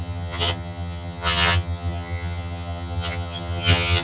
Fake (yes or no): yes